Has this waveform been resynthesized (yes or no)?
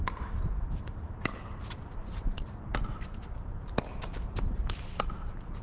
yes